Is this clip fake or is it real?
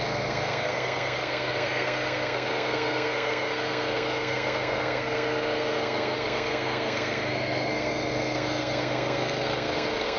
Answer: fake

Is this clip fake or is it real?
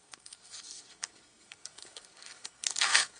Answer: fake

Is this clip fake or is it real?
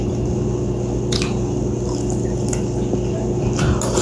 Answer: real